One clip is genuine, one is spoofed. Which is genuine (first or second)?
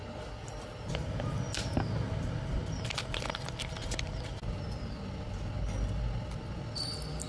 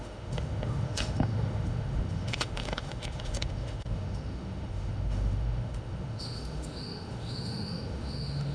first